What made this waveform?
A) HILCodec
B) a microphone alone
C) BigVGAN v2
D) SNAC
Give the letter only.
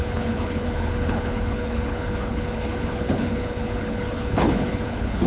A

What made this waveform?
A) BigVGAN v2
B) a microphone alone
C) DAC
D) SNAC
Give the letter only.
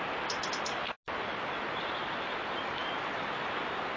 B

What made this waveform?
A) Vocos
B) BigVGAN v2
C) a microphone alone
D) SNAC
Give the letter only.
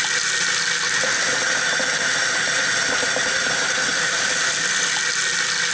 C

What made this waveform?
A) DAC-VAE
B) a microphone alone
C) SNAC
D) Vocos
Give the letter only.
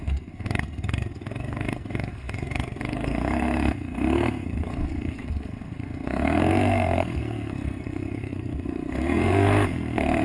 C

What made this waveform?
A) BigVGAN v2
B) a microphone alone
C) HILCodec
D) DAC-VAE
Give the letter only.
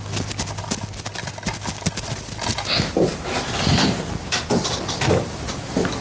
B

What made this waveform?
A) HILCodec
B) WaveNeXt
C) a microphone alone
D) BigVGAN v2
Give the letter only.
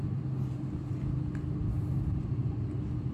C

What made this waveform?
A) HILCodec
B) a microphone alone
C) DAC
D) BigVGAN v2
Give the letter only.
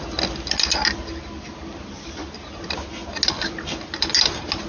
B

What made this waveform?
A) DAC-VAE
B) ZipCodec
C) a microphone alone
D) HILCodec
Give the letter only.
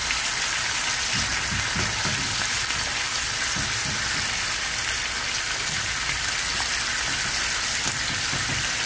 C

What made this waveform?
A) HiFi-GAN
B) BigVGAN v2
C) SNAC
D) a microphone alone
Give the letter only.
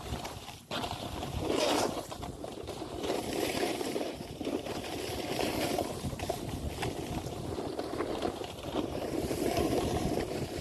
B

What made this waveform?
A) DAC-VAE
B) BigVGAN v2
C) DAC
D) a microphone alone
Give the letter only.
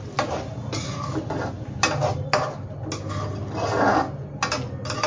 D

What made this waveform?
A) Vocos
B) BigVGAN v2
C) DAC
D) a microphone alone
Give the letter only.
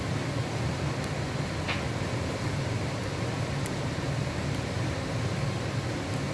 D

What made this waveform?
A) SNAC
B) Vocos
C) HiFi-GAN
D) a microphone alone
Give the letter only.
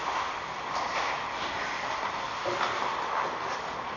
D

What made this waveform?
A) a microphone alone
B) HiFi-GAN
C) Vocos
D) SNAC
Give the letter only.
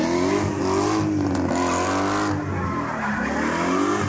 A